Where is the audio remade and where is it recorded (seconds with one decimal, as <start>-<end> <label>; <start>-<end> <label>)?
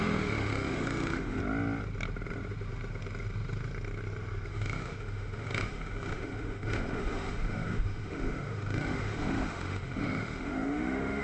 0.0-1.4 remade; 1.4-4.5 recorded; 4.5-11.2 remade